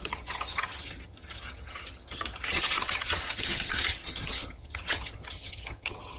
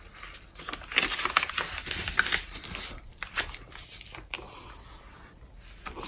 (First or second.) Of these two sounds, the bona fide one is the second